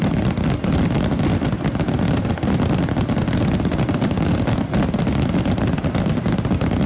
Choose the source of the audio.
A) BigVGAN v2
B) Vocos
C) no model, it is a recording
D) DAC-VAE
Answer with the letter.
C